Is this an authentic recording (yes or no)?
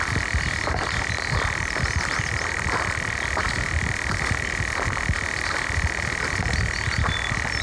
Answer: no